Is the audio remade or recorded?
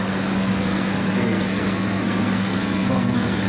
remade